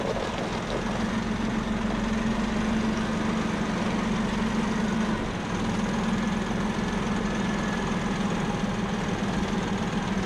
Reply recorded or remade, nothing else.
recorded